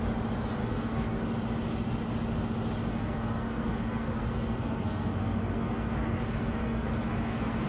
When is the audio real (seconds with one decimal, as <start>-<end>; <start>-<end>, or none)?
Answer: 0.0-0.6; 1.2-2.9

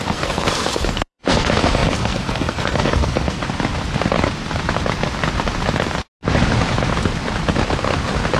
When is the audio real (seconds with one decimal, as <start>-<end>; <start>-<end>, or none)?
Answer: 3.4-8.4

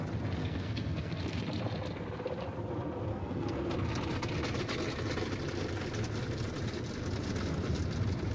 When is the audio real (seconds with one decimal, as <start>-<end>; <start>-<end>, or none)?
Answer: 0.0-0.4; 1.4-3.1; 3.7-8.3

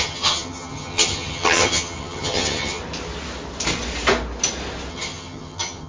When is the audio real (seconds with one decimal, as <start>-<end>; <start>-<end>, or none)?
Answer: 2.8-4.9

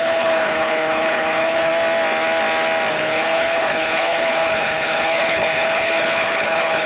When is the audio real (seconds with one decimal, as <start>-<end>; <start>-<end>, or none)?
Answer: 1.7-2.9